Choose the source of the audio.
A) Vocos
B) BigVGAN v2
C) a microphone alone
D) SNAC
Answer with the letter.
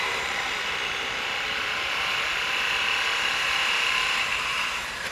B